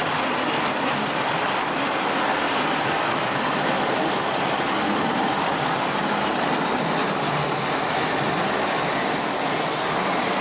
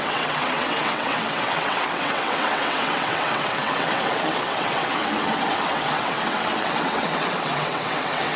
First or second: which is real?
first